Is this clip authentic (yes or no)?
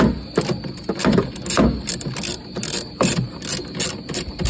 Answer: yes